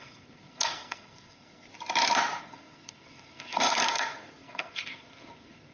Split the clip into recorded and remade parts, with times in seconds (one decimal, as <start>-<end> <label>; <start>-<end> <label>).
0.0-1.7 remade; 1.7-2.4 recorded; 2.4-5.7 remade